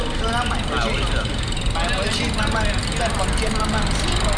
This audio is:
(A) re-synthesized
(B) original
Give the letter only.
B